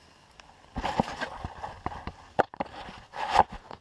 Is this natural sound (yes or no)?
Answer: yes